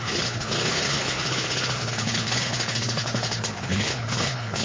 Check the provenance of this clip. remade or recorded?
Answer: remade